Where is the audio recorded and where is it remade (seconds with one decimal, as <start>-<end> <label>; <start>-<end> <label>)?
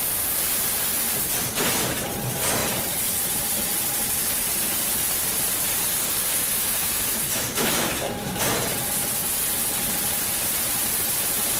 0.0-6.3 recorded; 6.3-8.4 remade; 8.4-11.6 recorded